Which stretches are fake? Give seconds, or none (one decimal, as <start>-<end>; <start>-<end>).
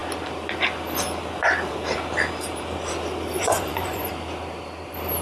3.4-4.1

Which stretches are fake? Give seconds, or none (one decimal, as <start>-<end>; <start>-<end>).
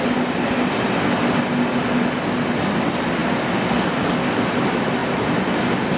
none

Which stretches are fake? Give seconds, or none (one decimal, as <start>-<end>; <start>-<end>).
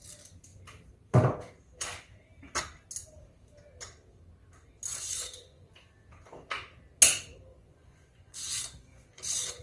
4.9-5.7; 7.5-9.6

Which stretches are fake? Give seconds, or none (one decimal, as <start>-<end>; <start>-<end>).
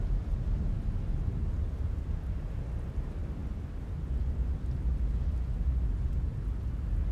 none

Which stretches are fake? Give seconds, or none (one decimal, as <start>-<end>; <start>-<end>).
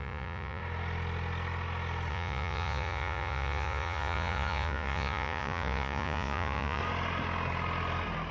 0.0-0.6; 2.1-6.8